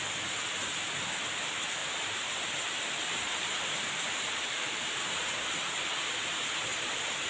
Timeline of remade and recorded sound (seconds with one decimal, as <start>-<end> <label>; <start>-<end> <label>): 0.0-1.8 recorded; 1.8-5.3 remade; 5.3-6.7 recorded; 6.7-7.3 remade